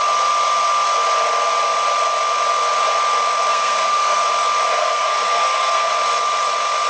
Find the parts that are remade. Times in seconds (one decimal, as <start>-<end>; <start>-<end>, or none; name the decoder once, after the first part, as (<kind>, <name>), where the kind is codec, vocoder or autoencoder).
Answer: 3.5-4.2 (codec, SNAC); 4.8-5.9